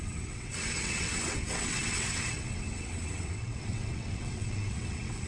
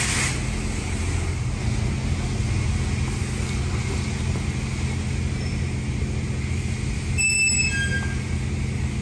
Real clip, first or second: second